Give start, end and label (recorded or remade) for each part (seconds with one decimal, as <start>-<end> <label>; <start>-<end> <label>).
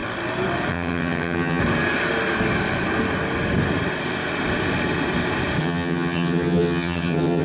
0.0-0.7 recorded; 0.7-1.6 remade; 1.6-5.6 recorded; 5.6-7.4 remade